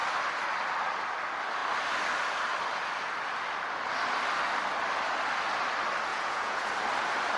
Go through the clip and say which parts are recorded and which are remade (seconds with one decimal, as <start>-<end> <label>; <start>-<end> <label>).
0.0-6.1 recorded; 6.1-6.7 remade; 6.7-7.4 recorded